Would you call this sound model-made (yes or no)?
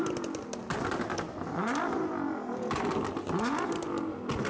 no